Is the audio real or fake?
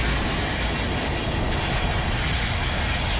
real